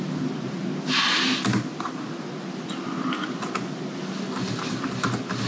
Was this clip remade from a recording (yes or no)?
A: no